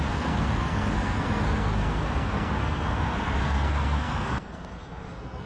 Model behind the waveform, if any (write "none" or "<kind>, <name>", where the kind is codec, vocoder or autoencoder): codec, SNAC